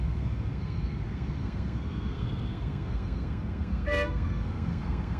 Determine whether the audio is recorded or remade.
remade